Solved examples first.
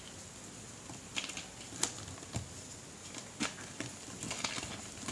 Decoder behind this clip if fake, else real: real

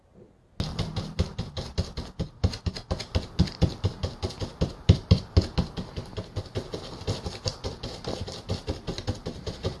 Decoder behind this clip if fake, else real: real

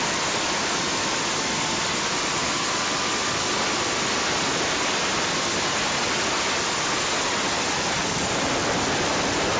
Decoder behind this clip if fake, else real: real